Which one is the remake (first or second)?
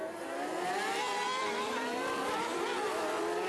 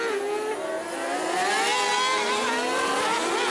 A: first